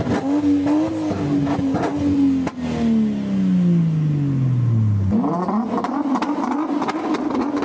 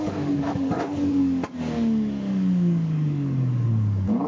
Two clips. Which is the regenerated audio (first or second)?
second